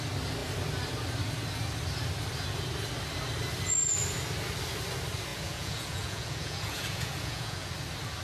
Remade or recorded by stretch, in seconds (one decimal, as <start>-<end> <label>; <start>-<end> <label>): 0.0-5.3 recorded; 5.3-7.7 remade; 7.7-8.2 recorded